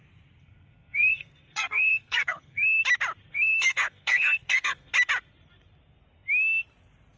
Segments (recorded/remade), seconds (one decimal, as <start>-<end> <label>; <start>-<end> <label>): 0.0-0.4 recorded; 0.4-2.8 remade; 2.8-3.3 recorded; 3.3-4.9 remade; 4.9-7.2 recorded

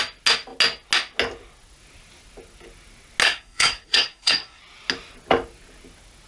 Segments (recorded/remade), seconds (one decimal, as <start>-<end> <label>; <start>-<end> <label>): 0.0-3.2 recorded; 3.2-4.6 remade; 4.6-6.3 recorded

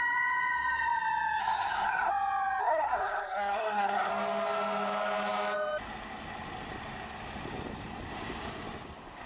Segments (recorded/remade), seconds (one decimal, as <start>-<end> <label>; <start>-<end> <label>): 0.0-1.4 recorded; 1.4-2.1 remade; 2.1-2.6 recorded; 2.6-4.1 remade; 4.1-9.3 recorded